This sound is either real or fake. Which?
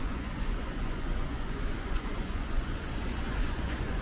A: fake